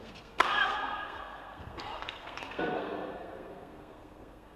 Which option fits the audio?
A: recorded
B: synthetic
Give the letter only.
B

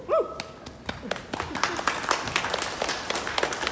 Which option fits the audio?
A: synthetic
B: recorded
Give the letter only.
B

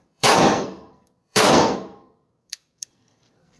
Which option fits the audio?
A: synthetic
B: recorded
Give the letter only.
A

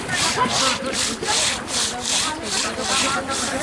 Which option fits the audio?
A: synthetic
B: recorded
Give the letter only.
B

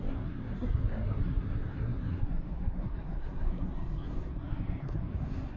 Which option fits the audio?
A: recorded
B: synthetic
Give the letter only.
B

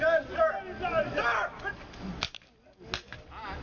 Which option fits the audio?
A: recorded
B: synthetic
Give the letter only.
A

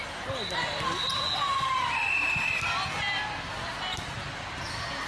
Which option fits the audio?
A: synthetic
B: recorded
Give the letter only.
B